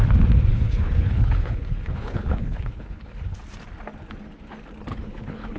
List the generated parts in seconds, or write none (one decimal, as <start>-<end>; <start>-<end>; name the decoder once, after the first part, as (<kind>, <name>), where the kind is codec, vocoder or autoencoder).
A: 0.5-3.4 (codec, HILCodec); 4.9-5.6